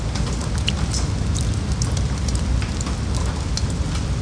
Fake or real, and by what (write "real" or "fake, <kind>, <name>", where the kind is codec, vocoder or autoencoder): real